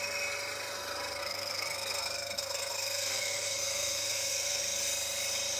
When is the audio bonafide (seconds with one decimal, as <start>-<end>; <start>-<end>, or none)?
0.0-1.2; 4.6-5.6